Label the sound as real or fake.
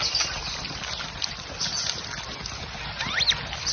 real